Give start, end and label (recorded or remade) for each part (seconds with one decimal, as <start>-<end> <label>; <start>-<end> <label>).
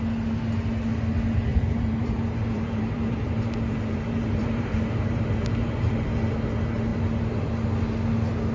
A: 0.0-1.5 recorded; 1.5-6.4 remade; 6.4-6.9 recorded; 6.9-7.4 remade; 7.4-8.5 recorded